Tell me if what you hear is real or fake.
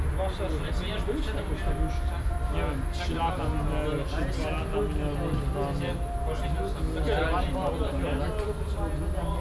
real